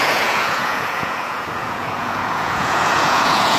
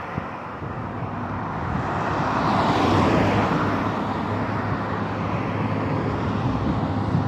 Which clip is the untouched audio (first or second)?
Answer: second